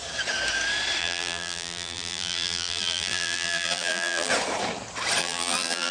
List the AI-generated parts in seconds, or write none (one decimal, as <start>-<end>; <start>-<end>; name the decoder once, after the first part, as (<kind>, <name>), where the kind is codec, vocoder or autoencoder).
1.0-4.3 (vocoder, BigVGAN v2); 5.2-5.9